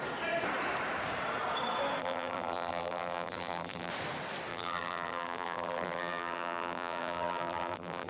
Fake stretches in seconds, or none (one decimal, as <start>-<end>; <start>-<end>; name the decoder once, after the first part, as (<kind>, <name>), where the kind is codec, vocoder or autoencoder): 2.0-3.9 (vocoder, BigVGAN v2); 4.5-8.1